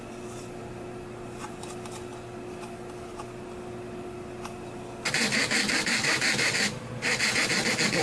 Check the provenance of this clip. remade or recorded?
recorded